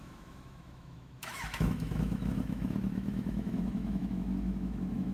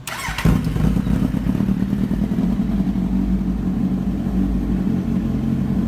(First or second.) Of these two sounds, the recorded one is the second